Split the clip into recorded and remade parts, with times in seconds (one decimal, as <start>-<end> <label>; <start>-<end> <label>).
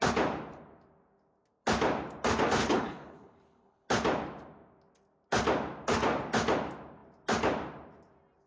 0.0-2.6 recorded; 2.6-3.9 remade; 3.9-8.5 recorded